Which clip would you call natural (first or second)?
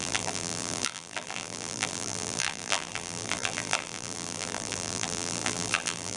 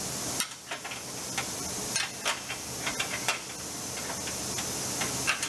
second